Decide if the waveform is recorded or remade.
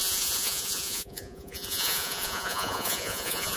remade